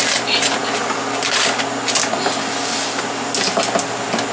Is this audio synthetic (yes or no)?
no